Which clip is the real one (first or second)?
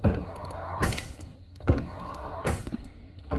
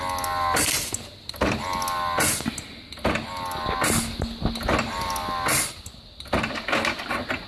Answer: second